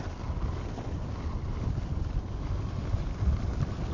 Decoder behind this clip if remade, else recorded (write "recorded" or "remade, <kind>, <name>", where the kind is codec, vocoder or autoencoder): recorded